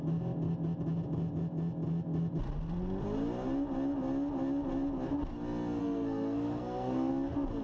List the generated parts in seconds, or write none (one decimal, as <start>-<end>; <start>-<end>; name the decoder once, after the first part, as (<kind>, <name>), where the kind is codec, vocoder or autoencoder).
5.8-7.1 (codec, SNAC)